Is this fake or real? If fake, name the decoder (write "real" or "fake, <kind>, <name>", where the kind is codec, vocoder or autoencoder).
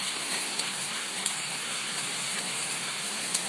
fake, codec, SNAC